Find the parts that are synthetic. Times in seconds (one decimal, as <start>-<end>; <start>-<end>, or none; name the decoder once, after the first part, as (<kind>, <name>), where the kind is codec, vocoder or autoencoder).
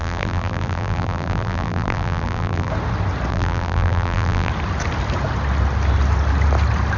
0.0-2.7 (vocoder, BigVGAN v2); 3.3-4.5